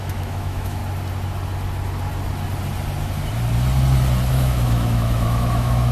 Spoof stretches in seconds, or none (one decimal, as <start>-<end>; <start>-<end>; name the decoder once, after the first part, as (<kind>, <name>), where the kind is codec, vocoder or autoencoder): 0.0-0.8 (autoencoder, DAC-VAE); 4.3-5.9